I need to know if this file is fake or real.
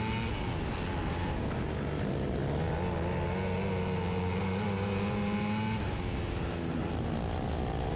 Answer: real